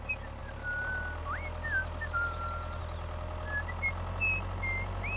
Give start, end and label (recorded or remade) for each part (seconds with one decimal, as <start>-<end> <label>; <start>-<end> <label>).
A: 0.0-5.2 recorded